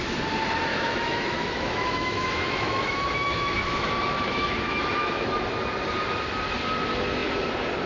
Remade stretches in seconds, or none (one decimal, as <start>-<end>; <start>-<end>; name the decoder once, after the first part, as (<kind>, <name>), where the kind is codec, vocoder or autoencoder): 0.7-5.4 (autoencoder, DAC-VAE)